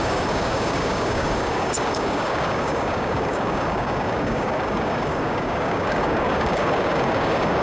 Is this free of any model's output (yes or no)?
no